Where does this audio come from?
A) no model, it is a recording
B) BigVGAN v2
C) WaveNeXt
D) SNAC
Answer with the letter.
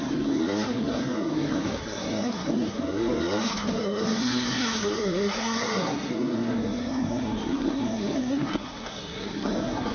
D